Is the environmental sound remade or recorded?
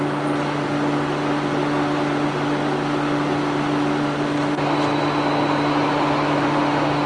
recorded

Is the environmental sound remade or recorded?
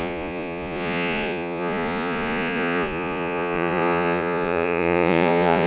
remade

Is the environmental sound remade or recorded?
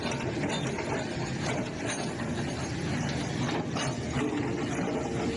recorded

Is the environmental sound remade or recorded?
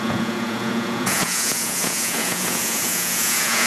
remade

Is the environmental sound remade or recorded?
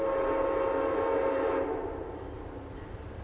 recorded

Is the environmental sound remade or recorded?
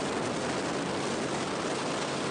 recorded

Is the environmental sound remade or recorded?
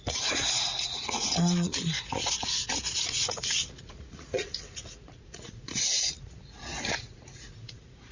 remade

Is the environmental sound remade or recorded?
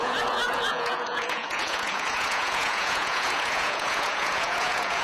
remade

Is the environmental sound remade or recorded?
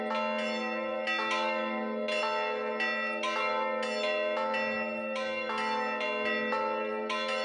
recorded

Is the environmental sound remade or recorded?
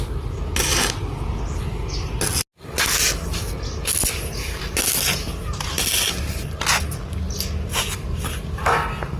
recorded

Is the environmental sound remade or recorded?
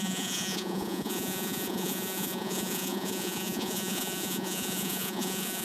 remade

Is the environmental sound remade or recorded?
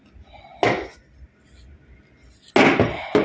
recorded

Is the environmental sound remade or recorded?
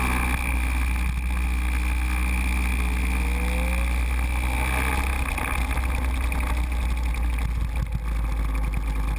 recorded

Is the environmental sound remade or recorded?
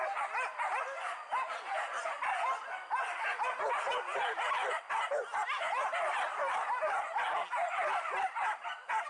recorded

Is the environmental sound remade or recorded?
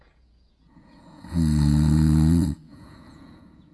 remade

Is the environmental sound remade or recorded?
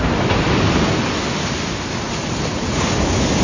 recorded